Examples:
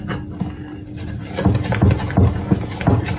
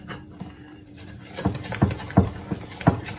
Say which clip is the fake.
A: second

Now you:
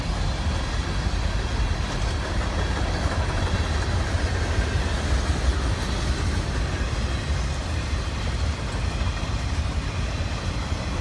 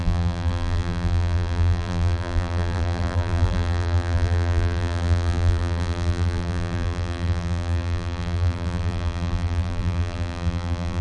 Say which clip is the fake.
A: second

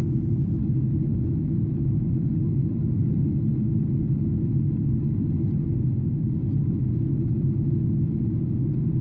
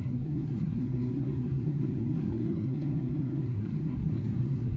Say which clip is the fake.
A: second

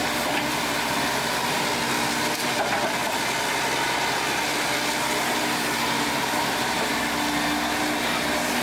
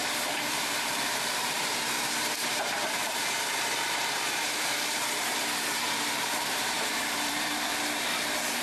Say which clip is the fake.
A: second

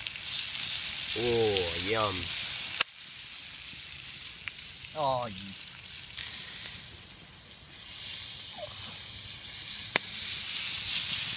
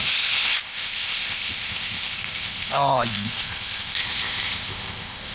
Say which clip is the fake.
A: second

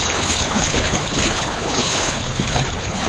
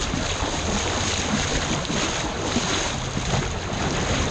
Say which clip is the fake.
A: first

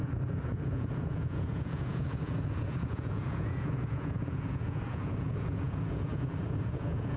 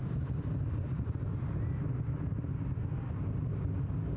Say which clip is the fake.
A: first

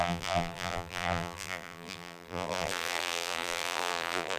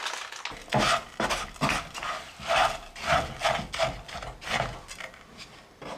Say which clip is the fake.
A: first